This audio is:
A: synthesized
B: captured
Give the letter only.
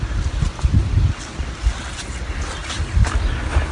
B